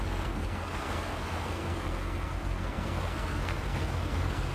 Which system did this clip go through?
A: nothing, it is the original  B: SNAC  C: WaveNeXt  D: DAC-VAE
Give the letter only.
B